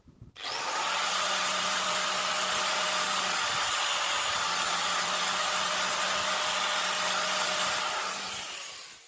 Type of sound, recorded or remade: recorded